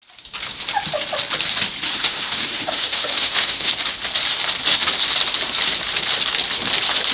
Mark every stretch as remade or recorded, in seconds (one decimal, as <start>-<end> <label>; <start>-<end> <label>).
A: 0.0-1.9 recorded; 1.9-3.7 remade; 3.7-7.1 recorded